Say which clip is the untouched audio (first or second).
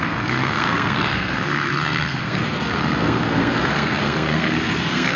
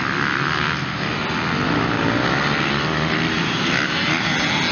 second